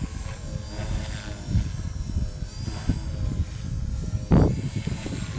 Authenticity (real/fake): real